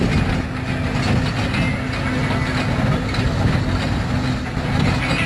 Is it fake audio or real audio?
real